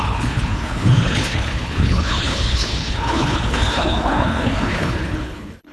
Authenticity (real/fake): fake